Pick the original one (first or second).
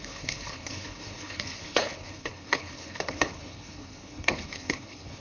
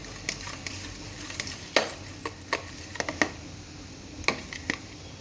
second